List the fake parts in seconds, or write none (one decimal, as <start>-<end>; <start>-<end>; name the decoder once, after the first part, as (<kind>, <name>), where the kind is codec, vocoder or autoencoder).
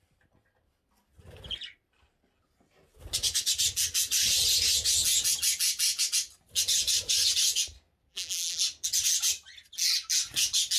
8.1-8.6 (vocoder, BigVGAN v2)